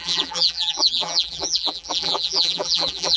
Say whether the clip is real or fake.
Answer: fake